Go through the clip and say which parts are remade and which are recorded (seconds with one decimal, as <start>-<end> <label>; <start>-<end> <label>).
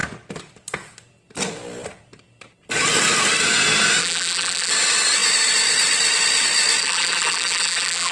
0.0-4.0 recorded; 4.0-4.7 remade; 4.7-6.8 recorded; 6.8-8.1 remade